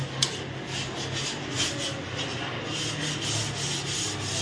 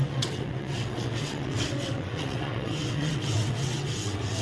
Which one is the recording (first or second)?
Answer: first